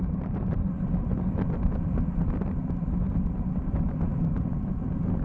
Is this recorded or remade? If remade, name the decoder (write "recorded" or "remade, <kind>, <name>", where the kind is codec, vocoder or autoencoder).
recorded